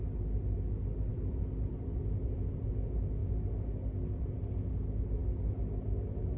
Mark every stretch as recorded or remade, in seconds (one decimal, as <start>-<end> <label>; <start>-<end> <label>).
0.0-1.1 recorded; 1.1-2.7 remade; 2.7-6.4 recorded

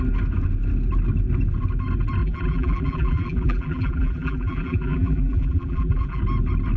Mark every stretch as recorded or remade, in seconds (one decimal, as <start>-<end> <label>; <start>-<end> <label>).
0.0-2.2 recorded; 2.2-6.2 remade; 6.2-6.8 recorded

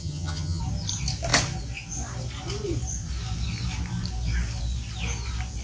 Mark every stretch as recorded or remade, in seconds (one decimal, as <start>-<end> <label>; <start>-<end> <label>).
0.0-0.6 remade; 0.6-5.6 recorded

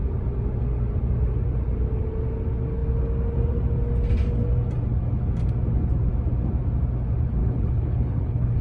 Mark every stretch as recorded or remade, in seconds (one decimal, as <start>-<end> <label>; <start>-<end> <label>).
0.0-7.4 recorded; 7.4-8.6 remade

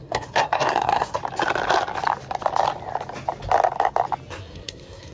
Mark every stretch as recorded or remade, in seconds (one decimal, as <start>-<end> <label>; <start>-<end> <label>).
0.0-1.2 remade; 1.2-4.3 recorded; 4.3-5.1 remade

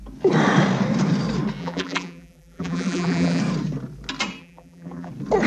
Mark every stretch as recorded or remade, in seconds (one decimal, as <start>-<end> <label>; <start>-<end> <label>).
0.0-1.6 recorded; 1.6-3.4 remade; 3.4-4.4 recorded; 4.4-5.1 remade; 5.1-5.5 recorded

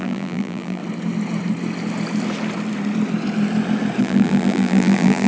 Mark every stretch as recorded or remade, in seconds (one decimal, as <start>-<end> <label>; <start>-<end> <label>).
0.0-0.8 remade; 0.8-4.0 recorded; 4.0-5.3 remade

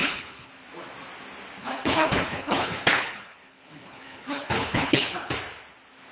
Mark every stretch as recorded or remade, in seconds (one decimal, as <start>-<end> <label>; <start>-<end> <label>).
0.0-0.5 remade; 0.5-1.6 recorded; 1.6-5.3 remade; 5.3-6.1 recorded